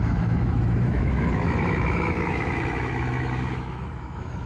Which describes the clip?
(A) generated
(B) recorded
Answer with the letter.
A